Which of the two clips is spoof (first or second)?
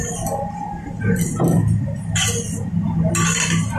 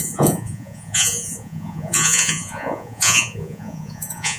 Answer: second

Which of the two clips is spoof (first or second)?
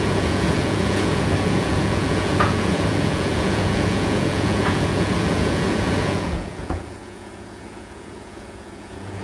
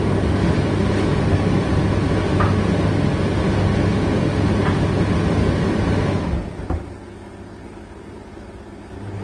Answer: first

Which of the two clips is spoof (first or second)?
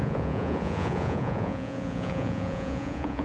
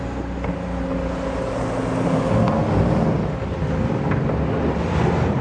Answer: first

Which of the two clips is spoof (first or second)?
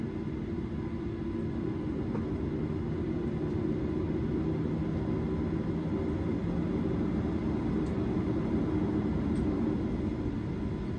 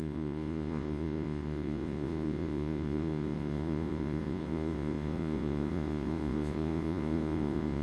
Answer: second